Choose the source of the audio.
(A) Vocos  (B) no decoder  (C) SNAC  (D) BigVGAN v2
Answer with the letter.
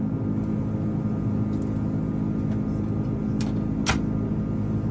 B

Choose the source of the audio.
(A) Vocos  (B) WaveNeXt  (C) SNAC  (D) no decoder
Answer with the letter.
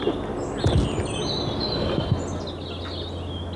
D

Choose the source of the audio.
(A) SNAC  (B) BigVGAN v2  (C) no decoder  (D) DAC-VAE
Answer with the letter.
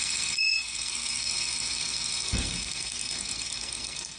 A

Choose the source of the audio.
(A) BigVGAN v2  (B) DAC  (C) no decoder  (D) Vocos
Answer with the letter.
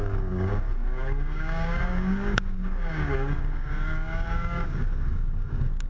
B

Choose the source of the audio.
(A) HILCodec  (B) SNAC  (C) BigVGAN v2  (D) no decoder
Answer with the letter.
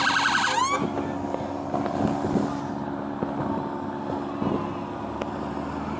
D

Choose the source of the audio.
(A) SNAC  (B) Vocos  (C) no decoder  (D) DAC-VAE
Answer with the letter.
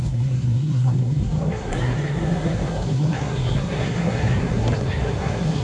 A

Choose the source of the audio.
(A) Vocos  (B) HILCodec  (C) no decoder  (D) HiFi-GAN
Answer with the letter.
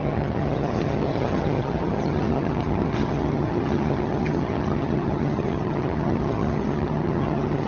D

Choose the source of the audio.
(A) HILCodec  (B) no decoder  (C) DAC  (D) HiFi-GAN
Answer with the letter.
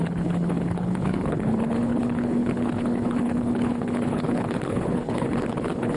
A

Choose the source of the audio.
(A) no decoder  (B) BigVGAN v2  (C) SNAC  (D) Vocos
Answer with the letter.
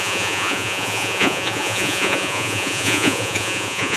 D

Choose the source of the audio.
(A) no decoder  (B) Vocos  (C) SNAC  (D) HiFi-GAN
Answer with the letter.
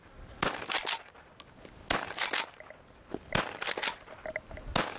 A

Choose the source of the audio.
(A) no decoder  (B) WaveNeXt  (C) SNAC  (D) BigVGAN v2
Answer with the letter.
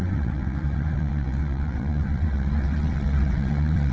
B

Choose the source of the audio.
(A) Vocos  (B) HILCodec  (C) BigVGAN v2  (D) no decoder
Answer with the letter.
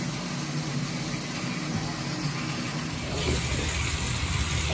D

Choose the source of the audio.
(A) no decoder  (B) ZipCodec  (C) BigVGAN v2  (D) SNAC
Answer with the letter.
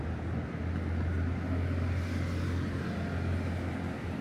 A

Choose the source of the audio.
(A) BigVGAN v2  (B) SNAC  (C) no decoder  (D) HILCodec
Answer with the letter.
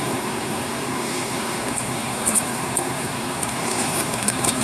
B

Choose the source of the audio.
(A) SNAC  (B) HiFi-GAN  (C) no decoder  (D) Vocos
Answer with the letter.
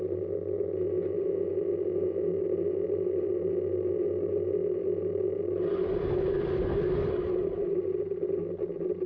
C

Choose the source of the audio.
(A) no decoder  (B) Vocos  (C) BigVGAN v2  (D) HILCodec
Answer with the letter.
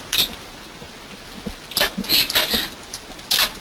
A